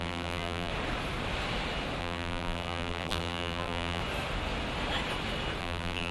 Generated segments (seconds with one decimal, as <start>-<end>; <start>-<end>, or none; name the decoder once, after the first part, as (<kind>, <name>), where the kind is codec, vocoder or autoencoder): 0.0-0.7 (vocoder, BigVGAN v2); 2.0-4.0; 5.6-6.1